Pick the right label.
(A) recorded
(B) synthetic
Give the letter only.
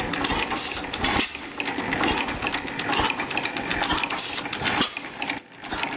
A